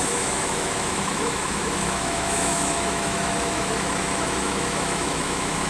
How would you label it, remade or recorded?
remade